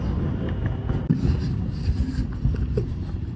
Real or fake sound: real